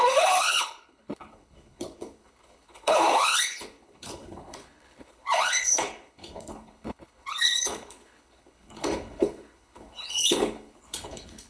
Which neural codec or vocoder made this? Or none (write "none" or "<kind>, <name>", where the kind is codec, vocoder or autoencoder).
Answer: codec, HILCodec